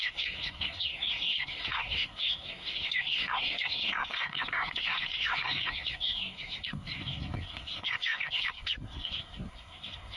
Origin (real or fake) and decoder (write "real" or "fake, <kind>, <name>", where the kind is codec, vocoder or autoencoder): fake, codec, SNAC